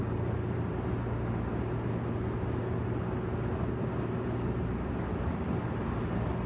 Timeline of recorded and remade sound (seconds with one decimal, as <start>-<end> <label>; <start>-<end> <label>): 0.0-6.5 recorded